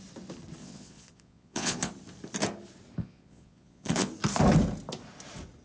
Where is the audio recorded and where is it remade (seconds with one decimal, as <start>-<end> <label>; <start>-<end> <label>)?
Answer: 0.0-0.6 recorded; 0.6-1.9 remade; 1.9-3.0 recorded; 3.0-4.1 remade; 4.1-5.6 recorded